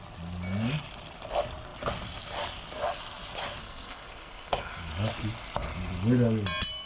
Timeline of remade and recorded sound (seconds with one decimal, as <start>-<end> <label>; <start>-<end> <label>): 0.0-3.6 recorded; 3.6-4.9 remade; 4.9-6.9 recorded